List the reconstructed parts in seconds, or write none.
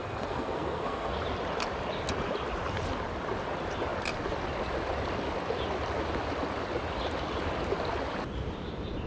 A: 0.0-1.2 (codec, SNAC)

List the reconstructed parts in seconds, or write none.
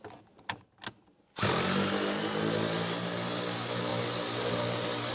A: none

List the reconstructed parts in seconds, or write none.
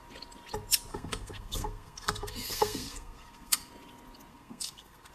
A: 0.9-3.7 (codec, SNAC); 4.3-5.1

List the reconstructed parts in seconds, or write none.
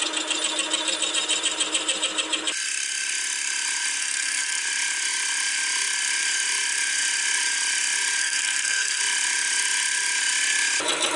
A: 4.0-4.6 (codec, SNAC); 8.2-9.0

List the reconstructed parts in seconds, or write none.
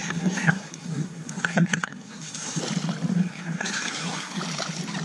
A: 0.0-2.6 (codec, SNAC); 3.1-4.4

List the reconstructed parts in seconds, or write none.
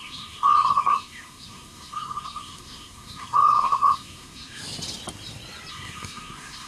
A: 0.0-4.6 (codec, SNAC); 5.7-6.7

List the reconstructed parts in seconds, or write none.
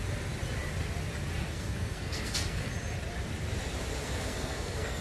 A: 1.4-2.7 (codec, SNAC); 4.0-5.0